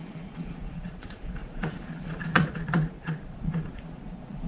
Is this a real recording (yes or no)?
no